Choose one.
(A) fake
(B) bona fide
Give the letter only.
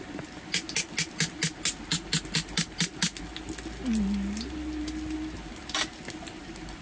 B